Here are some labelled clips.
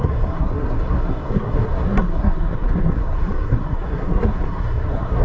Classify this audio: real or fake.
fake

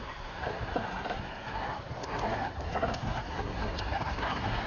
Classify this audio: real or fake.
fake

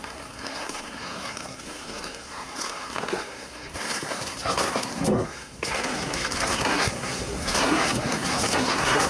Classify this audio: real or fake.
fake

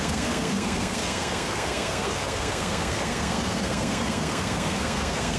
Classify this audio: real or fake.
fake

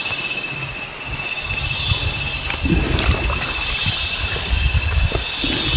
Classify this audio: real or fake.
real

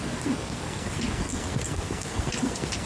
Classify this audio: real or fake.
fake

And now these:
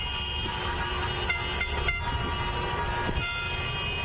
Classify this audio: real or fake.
real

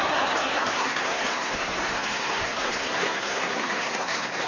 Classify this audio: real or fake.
fake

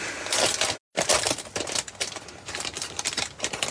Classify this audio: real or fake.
real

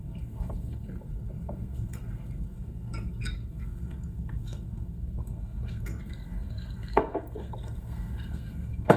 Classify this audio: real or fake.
fake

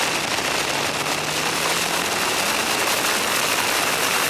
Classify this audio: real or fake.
real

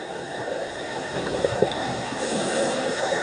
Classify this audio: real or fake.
fake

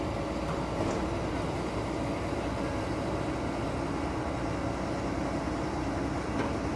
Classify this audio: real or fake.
real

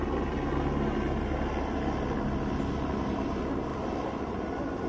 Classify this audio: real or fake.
real